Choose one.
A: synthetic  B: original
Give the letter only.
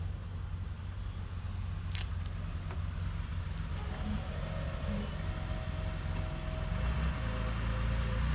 B